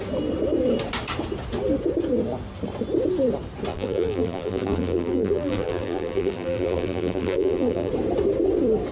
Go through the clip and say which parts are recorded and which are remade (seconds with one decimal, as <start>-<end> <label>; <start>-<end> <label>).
0.0-3.7 recorded; 3.7-7.9 remade; 7.9-8.9 recorded